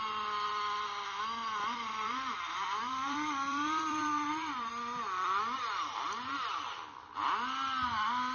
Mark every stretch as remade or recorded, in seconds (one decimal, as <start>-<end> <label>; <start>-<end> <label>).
0.0-1.5 recorded; 1.5-4.7 remade; 4.7-8.3 recorded